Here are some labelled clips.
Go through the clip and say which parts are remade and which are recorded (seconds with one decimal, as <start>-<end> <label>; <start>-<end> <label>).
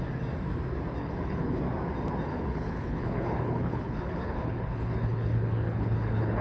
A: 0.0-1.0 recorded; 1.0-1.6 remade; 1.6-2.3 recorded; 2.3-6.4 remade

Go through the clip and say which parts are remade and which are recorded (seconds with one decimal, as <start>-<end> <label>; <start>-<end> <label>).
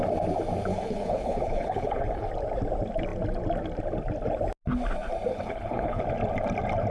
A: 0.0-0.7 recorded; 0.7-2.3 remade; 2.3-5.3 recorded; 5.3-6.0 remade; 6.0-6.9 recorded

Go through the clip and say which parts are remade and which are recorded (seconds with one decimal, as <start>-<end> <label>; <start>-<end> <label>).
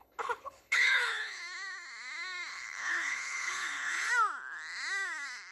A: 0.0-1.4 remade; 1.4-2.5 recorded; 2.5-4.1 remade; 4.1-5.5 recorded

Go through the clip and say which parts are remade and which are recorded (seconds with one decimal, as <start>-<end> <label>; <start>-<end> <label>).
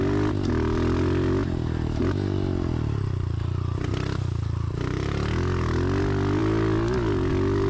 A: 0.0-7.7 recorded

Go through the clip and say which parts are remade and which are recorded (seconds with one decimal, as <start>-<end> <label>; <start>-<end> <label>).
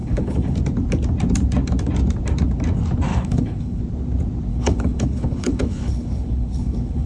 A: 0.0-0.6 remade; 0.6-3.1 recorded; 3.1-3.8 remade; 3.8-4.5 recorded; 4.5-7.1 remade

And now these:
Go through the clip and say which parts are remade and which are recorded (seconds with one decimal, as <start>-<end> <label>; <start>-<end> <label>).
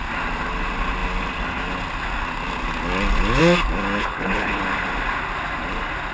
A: 0.0-4.0 recorded; 4.0-4.6 remade; 4.6-6.1 recorded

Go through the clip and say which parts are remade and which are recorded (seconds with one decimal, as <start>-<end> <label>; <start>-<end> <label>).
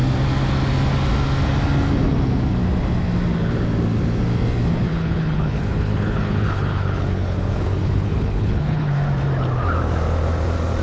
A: 0.0-4.9 recorded; 4.9-8.9 remade; 8.9-10.8 recorded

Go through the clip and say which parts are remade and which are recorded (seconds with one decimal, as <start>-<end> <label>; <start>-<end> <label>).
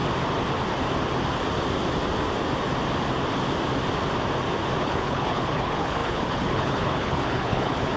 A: 0.0-4.8 recorded; 4.8-8.0 remade